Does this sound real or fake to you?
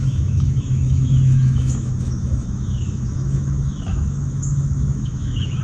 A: fake